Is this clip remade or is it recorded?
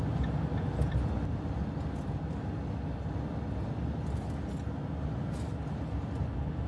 recorded